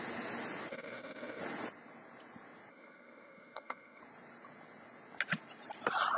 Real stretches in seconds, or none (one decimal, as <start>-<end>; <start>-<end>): 0.0-0.7; 1.4-2.7; 4.0-6.2